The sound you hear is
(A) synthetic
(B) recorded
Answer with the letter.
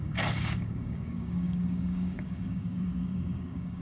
A